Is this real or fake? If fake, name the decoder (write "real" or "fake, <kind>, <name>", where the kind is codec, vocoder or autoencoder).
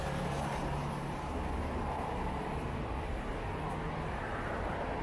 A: real